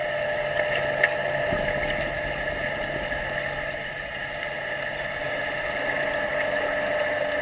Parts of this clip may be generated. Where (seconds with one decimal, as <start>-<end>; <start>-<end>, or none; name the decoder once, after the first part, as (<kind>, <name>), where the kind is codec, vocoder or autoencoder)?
none